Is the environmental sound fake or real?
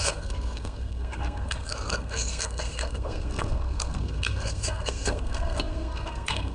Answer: fake